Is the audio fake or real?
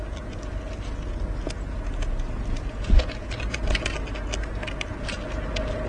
real